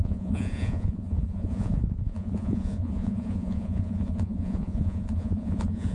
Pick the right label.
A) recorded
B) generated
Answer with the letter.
B